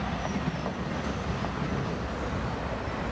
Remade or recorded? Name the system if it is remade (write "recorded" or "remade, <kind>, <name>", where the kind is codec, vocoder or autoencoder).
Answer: recorded